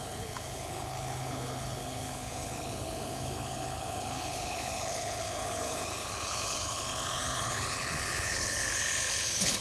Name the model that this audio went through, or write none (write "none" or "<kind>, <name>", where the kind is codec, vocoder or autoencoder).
codec, HILCodec